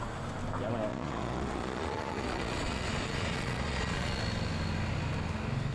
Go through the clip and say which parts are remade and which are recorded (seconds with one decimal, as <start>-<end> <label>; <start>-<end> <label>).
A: 0.0-0.9 recorded; 0.9-4.2 remade; 4.2-5.7 recorded